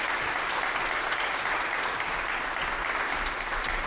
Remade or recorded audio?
recorded